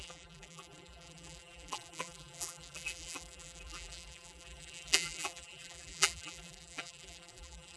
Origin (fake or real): fake